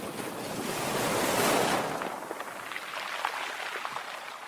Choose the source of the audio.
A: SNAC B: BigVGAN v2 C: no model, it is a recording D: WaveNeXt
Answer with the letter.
C